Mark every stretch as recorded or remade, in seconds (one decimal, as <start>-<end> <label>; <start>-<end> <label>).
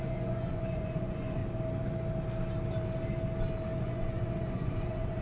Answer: 0.0-1.4 remade; 1.4-3.8 recorded; 3.8-5.2 remade